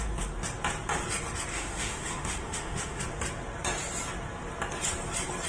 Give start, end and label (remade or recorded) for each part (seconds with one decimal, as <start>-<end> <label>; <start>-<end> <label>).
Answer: 0.0-1.5 recorded; 1.5-3.0 remade; 3.0-5.5 recorded